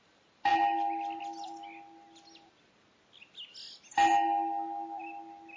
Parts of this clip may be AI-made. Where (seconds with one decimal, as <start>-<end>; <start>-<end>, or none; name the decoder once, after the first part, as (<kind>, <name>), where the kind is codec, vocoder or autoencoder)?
none